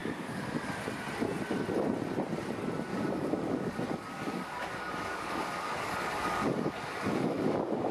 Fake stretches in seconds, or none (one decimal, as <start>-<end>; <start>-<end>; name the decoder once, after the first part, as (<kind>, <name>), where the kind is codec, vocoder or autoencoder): 0.0-0.7 (codec, DAC); 2.9-7.9